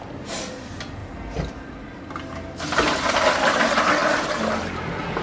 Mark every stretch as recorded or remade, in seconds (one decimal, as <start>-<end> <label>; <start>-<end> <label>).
0.0-5.2 recorded

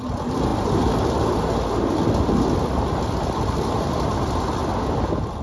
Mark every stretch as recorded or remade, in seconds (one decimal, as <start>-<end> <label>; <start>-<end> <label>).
0.0-5.4 recorded

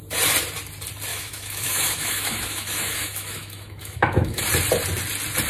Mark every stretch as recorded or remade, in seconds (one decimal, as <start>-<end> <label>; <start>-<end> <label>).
0.0-1.1 recorded; 1.1-4.4 remade; 4.4-5.5 recorded

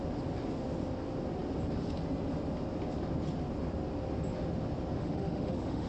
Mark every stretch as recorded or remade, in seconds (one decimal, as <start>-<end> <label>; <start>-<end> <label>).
0.0-5.0 recorded; 5.0-5.9 remade

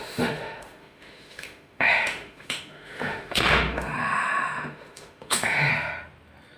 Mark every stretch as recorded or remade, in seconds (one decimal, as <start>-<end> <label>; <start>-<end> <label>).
0.0-5.7 remade; 5.7-6.6 recorded

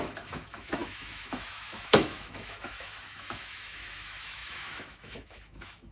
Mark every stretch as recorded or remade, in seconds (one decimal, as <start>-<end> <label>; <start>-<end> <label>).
0.0-5.9 remade